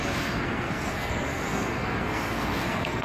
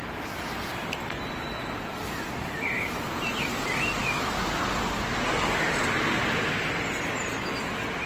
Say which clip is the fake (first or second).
first